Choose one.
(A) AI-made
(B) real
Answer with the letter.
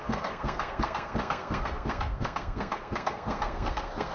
A